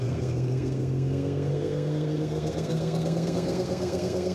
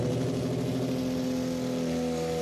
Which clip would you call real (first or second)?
second